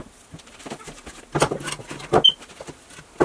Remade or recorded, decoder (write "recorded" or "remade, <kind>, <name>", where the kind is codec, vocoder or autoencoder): recorded